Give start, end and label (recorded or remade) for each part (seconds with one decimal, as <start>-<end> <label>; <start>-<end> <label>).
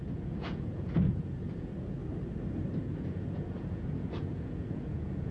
0.0-2.0 remade; 2.0-2.8 recorded; 2.8-5.3 remade